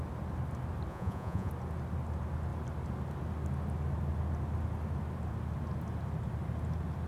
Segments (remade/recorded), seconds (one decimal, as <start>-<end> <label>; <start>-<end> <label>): 0.0-0.9 recorded; 0.9-1.5 remade; 1.5-7.1 recorded